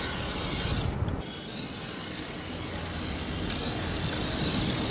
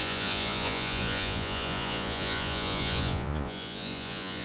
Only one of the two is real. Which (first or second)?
first